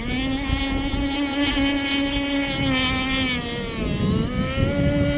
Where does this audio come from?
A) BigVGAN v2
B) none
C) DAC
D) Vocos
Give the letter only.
B